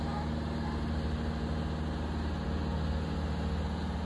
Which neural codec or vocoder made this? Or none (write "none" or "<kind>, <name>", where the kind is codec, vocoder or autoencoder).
none